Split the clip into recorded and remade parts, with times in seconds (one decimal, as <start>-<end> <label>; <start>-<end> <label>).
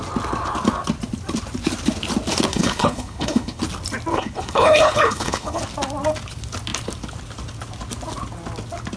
0.0-2.5 recorded; 2.5-3.6 remade; 3.6-4.1 recorded; 4.1-5.6 remade; 5.6-9.0 recorded